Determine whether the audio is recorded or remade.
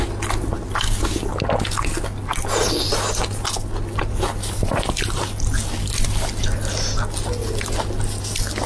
recorded